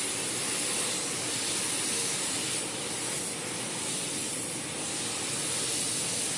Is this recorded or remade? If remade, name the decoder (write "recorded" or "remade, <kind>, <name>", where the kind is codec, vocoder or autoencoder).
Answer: recorded